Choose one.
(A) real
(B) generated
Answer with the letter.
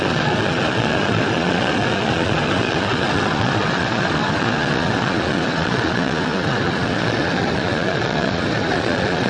B